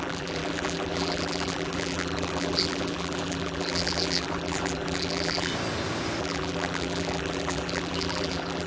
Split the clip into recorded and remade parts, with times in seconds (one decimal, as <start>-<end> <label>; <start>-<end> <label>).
0.0-5.5 remade; 5.5-6.2 recorded; 6.2-8.7 remade